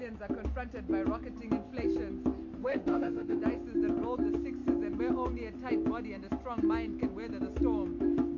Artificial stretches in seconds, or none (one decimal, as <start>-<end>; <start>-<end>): 2.6-3.4